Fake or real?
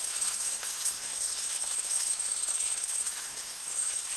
fake